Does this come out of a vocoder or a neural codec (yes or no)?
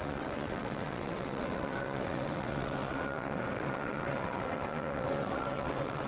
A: yes